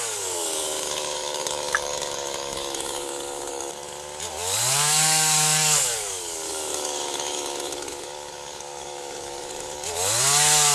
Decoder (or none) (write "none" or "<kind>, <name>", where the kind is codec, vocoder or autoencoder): codec, DAC